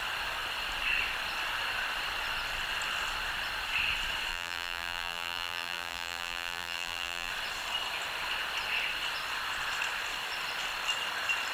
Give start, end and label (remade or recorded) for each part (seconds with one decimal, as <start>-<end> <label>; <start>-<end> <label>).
0.0-4.3 recorded; 4.3-7.3 remade; 7.3-11.5 recorded